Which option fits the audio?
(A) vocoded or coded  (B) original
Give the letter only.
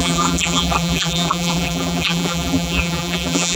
A